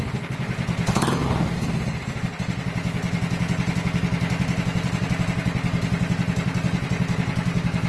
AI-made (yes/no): no